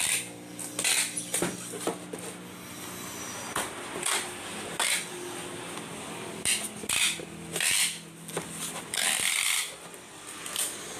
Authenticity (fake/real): real